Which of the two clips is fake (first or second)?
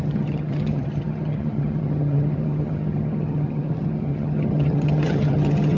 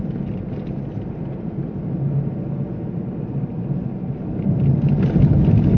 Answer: first